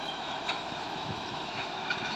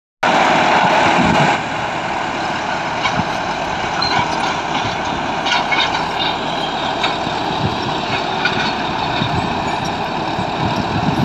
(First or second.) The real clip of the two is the second